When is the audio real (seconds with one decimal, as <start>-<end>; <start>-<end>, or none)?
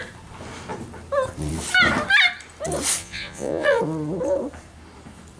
0.0-3.0; 3.8-5.4